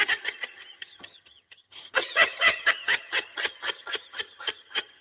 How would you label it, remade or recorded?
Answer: remade